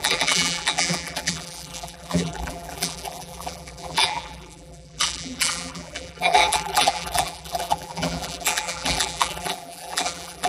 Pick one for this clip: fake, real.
fake